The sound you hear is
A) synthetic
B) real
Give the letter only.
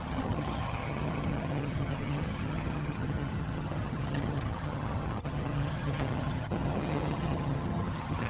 A